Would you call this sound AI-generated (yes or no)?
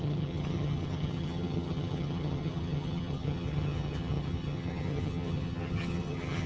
yes